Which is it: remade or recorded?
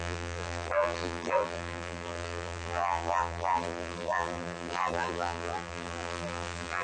remade